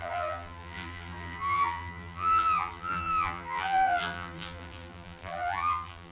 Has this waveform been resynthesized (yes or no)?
yes